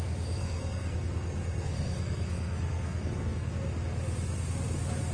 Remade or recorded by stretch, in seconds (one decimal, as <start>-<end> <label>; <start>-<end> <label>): 0.0-0.4 recorded; 0.4-3.5 remade; 3.5-5.1 recorded